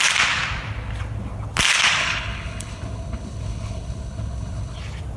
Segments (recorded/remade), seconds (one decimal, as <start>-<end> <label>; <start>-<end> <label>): 0.0-2.0 recorded; 2.0-4.8 remade; 4.8-5.2 recorded

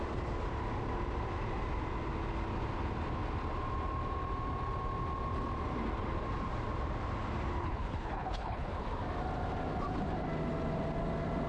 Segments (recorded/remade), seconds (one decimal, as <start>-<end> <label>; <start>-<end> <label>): 0.0-7.6 recorded; 7.6-8.7 remade; 8.7-11.5 recorded

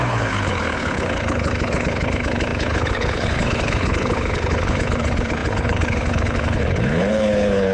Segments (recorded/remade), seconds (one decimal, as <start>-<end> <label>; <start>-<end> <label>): 0.0-7.7 remade

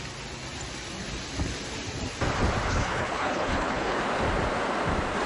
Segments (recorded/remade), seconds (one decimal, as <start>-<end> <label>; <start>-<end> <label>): 0.0-2.7 recorded; 2.7-4.0 remade; 4.0-5.3 recorded

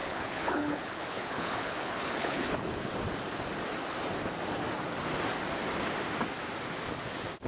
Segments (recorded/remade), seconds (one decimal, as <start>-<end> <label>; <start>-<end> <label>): 0.0-2.9 remade; 2.9-7.5 recorded

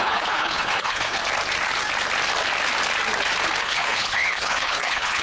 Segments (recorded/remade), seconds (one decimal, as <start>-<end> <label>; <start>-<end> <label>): 0.0-1.2 remade; 1.2-3.6 recorded; 3.6-5.2 remade